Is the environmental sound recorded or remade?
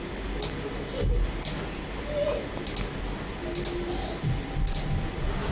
recorded